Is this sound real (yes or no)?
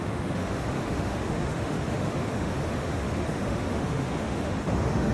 no